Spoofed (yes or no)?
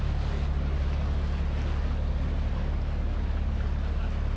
no